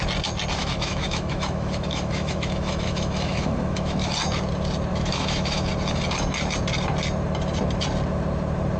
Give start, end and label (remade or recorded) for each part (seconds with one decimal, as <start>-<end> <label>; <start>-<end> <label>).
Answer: 0.0-0.6 recorded; 0.6-4.1 remade; 4.1-4.9 recorded; 4.9-5.7 remade; 5.7-8.8 recorded